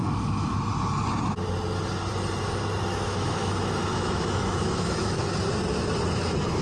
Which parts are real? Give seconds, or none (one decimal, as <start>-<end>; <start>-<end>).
0.6-2.9; 5.2-6.6